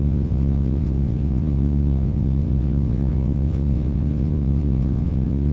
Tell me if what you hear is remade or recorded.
remade